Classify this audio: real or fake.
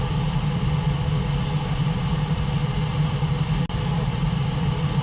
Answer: real